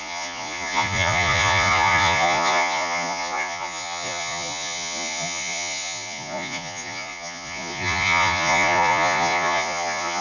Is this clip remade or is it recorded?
remade